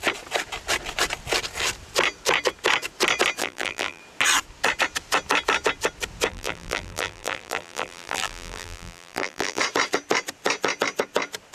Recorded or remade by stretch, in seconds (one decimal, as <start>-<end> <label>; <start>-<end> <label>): 0.0-3.4 recorded; 3.4-4.0 remade; 4.0-6.3 recorded; 6.3-9.6 remade; 9.6-11.5 recorded